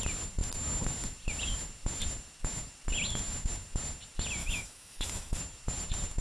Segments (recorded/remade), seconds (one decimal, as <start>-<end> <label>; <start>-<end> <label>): 0.0-4.4 recorded; 4.4-5.4 remade; 5.4-6.2 recorded